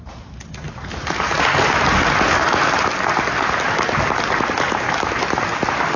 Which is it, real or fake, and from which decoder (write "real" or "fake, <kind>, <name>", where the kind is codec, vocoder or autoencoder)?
real